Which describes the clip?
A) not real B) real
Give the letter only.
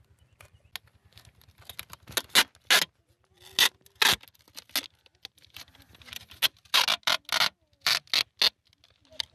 B